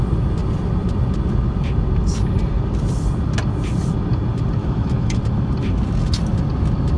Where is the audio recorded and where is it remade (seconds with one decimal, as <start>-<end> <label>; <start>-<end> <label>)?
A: 0.0-4.6 recorded; 4.6-5.2 remade; 5.2-7.0 recorded